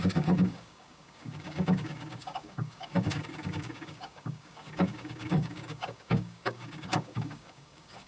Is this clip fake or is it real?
fake